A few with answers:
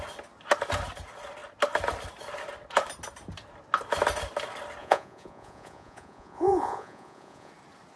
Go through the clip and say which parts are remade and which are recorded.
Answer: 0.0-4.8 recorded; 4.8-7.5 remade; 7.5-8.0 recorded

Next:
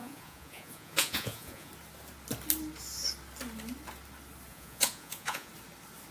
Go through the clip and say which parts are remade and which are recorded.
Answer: 0.0-1.7 remade; 1.7-4.5 recorded; 4.5-5.5 remade; 5.5-6.1 recorded

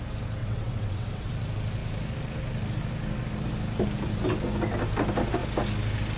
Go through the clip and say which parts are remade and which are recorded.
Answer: 0.0-0.4 recorded; 0.4-1.3 remade; 1.3-6.2 recorded

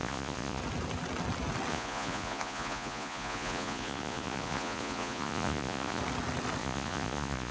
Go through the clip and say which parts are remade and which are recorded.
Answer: 0.0-0.6 remade; 0.6-1.7 recorded; 1.7-6.0 remade; 6.0-6.6 recorded; 6.6-7.5 remade

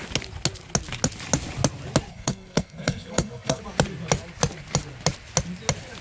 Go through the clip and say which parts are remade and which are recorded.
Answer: 0.0-2.1 recorded; 2.1-3.6 remade; 3.6-6.0 recorded

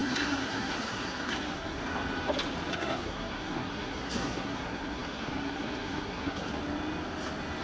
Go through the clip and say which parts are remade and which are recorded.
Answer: 0.0-1.8 remade; 1.8-2.7 recorded; 2.7-6.6 remade; 6.6-7.6 recorded